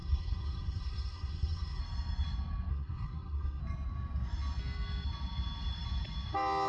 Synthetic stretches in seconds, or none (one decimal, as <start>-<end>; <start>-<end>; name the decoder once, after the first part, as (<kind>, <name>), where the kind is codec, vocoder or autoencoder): 0.0-1.8 (codec, SNAC); 2.7-3.6